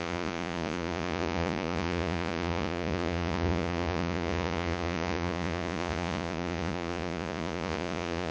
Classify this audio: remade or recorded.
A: remade